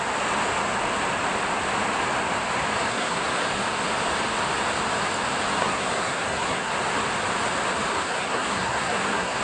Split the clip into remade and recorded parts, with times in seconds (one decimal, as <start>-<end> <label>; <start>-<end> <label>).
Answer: 0.0-2.9 recorded; 2.9-3.5 remade; 3.5-5.6 recorded; 5.6-6.7 remade; 6.7-7.9 recorded; 7.9-9.4 remade